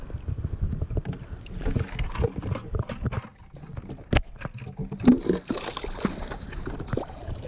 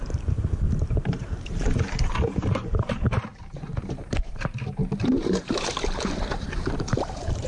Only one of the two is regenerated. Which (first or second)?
second